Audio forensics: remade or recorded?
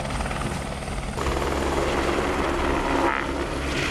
recorded